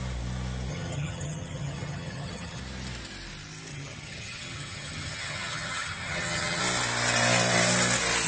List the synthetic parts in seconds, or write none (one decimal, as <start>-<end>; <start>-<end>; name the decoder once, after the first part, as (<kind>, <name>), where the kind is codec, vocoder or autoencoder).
0.7-2.6 (vocoder, HiFi-GAN); 3.7-6.6